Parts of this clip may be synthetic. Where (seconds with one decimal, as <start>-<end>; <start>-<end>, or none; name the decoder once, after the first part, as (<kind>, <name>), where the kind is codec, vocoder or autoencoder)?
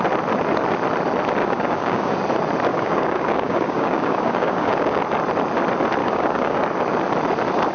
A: 1.4-2.2 (codec, DAC); 2.7-5.0; 6.0-6.6